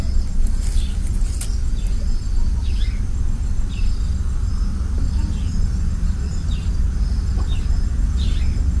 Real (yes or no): yes